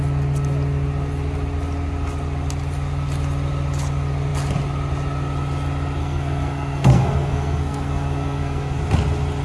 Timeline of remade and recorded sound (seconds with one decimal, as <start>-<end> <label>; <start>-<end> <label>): 0.0-6.0 recorded; 6.0-8.8 remade; 8.8-9.4 recorded